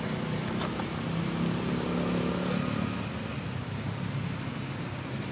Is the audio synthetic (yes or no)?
no